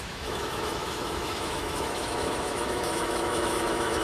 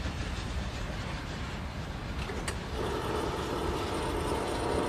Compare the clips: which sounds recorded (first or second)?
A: second